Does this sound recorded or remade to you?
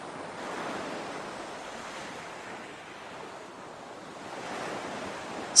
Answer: recorded